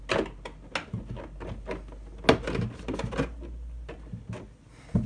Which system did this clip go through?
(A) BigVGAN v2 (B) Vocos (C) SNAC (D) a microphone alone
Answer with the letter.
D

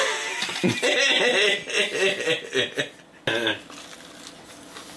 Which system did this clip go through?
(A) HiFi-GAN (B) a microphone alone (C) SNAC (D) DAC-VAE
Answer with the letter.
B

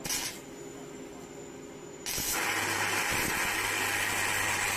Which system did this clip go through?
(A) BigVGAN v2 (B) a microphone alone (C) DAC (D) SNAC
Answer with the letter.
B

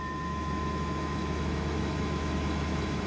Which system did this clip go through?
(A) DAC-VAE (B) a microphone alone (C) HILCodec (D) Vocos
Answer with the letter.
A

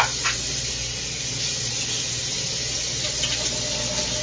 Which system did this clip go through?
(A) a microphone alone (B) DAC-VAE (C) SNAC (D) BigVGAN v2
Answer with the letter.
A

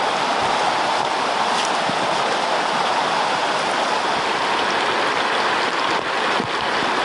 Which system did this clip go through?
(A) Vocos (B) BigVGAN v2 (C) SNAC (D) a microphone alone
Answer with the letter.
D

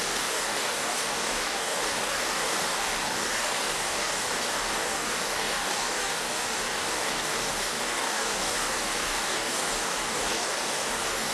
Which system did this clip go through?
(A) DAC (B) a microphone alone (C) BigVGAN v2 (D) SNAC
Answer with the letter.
A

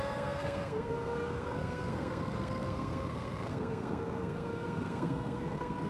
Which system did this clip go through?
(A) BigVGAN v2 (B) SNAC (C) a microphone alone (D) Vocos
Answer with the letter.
B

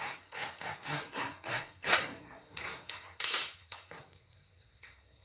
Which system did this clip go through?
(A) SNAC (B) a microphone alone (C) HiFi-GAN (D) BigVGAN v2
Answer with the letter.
A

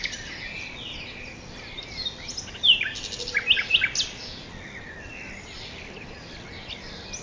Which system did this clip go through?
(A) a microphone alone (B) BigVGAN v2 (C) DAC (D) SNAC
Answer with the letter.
A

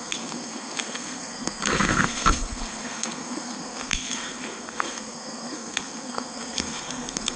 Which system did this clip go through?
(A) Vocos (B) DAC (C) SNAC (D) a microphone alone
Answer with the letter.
C